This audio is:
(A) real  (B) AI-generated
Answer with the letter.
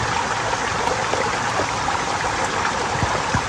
A